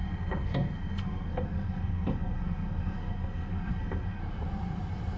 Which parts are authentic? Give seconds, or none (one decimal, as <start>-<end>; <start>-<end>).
4.2-5.2